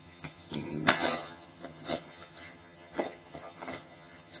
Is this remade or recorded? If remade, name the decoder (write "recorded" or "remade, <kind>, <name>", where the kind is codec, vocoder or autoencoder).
remade, vocoder, HiFi-GAN